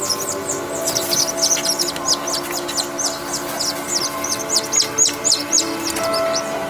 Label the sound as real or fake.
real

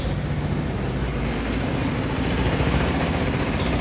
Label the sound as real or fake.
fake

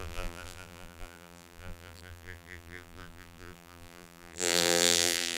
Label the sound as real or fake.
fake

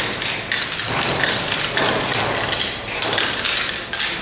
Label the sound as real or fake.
real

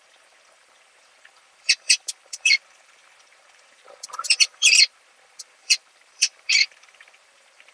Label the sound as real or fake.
fake